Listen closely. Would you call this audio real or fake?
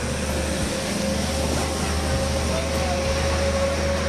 real